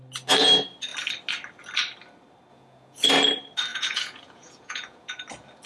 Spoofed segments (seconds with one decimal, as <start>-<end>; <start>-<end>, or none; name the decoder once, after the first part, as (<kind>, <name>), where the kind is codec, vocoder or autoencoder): 2.5-3.1 (vocoder, Vocos); 3.7-5.2